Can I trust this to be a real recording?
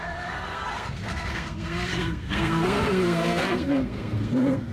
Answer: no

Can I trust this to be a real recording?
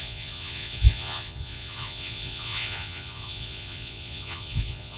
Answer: no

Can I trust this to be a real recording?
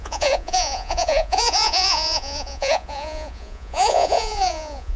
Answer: no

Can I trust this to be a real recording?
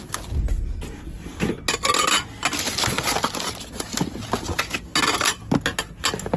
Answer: yes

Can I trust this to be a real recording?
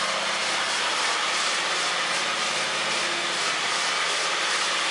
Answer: yes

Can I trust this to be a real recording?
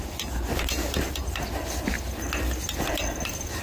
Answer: yes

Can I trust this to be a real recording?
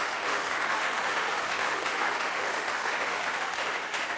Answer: no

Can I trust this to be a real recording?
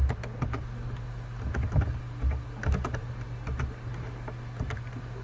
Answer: yes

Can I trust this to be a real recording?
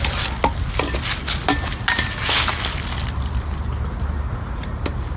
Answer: yes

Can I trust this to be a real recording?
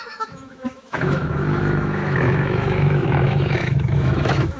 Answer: no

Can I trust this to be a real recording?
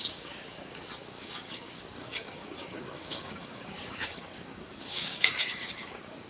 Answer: no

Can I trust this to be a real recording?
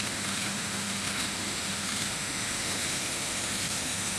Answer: no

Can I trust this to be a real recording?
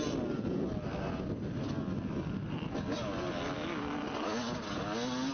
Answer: yes